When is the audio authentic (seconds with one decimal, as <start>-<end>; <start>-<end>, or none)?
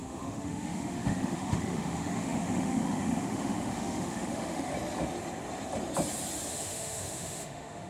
4.7-6.5